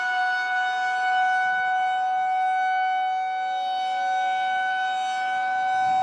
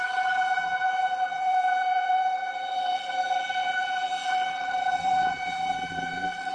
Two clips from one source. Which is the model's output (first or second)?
second